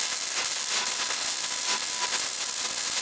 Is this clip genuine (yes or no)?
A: yes